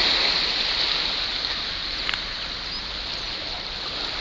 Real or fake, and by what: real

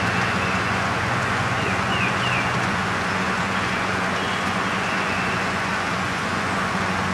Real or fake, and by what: fake, vocoder, Vocos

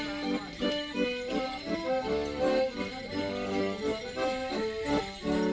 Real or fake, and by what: real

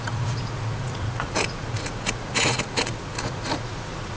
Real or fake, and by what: fake, vocoder, Vocos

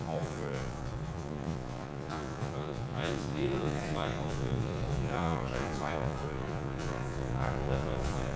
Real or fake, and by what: fake, vocoder, Vocos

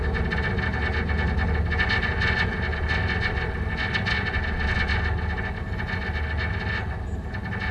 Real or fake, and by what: real